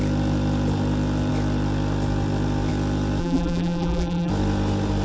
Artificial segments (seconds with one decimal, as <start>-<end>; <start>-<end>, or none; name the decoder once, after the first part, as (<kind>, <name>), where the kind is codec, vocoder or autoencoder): 3.2-4.3 (vocoder, BigVGAN v2)